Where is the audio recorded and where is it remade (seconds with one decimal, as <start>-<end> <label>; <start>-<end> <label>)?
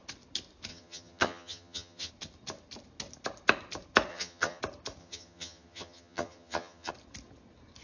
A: 0.0-0.7 recorded; 0.7-2.1 remade; 2.1-4.1 recorded; 4.1-4.6 remade; 4.6-5.0 recorded; 5.0-6.9 remade; 6.9-7.8 recorded